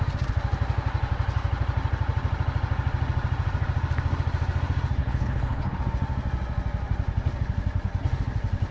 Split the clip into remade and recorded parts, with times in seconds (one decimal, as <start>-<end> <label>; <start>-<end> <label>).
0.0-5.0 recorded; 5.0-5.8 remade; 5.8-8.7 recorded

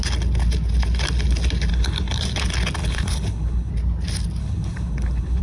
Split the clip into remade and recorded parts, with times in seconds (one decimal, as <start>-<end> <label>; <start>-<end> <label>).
0.0-1.7 recorded; 1.7-2.2 remade; 2.2-2.8 recorded; 2.8-3.7 remade; 3.7-4.4 recorded; 4.4-5.4 remade

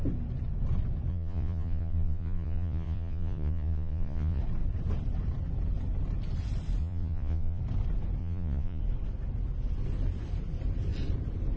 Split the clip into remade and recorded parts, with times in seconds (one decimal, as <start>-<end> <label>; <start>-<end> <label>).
0.0-1.1 recorded; 1.1-4.4 remade; 4.4-6.8 recorded; 6.8-7.6 remade; 7.6-8.2 recorded; 8.2-8.8 remade; 8.8-11.6 recorded

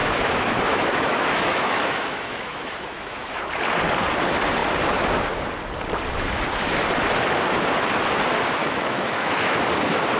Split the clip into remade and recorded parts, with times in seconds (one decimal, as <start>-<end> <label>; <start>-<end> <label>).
0.0-3.4 remade; 3.4-8.6 recorded; 8.6-9.6 remade; 9.6-10.2 recorded

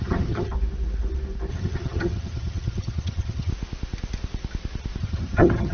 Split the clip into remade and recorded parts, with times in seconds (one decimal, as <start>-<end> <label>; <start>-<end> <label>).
0.0-0.5 remade; 0.5-1.5 recorded; 1.5-3.5 remade; 3.5-5.0 recorded; 5.0-5.7 remade